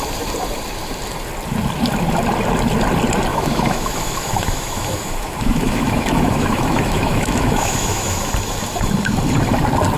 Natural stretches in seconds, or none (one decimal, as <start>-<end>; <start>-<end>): 0.0-3.3; 8.3-10.0